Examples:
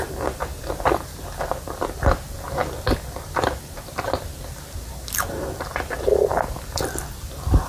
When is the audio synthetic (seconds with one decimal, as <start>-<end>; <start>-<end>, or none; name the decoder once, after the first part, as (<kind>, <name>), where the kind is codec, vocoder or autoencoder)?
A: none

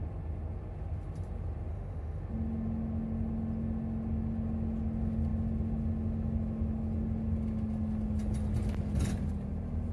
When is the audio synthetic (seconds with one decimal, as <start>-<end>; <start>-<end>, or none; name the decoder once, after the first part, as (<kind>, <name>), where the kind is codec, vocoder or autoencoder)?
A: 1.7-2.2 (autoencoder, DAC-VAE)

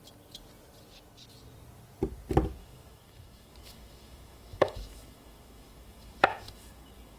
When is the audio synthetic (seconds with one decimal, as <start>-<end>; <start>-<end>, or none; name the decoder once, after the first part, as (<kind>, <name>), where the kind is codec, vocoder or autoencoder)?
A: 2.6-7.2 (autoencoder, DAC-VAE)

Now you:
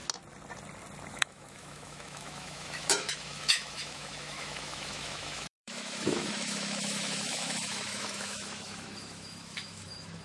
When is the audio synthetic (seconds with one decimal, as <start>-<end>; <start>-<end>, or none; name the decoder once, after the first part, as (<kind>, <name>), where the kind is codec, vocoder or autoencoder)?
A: 1.1-10.2 (autoencoder, DAC-VAE)

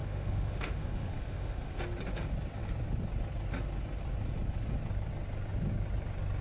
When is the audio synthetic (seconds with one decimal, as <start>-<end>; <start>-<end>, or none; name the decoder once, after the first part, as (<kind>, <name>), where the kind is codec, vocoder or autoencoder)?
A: 0.0-1.8 (autoencoder, DAC-VAE)